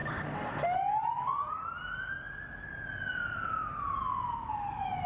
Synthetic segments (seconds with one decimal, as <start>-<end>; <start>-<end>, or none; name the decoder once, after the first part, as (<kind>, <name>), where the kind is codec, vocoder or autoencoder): none

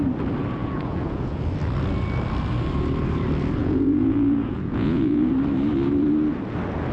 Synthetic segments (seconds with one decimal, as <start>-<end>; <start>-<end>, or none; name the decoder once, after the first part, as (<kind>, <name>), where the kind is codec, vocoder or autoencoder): 0.6-1.4 (vocoder, Vocos); 3.6-5.3

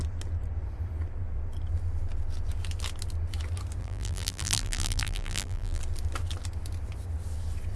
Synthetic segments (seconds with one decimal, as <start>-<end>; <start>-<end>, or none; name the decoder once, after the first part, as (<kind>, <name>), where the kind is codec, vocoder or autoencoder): 3.8-5.8 (vocoder, BigVGAN v2)

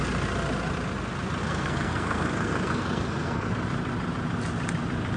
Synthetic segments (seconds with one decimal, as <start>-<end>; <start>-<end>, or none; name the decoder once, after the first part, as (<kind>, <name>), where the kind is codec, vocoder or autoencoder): 1.4-3.5 (codec, SNAC)

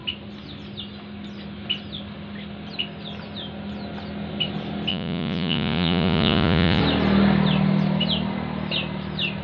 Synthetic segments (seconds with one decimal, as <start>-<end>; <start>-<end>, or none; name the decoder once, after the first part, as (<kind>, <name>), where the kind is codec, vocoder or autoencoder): 4.9-6.8 (vocoder, Vocos)

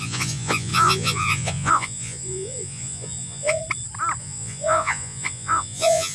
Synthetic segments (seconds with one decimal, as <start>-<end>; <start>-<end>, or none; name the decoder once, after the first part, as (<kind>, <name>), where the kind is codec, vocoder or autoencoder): 0.0-3.6 (vocoder, Vocos); 4.2-6.1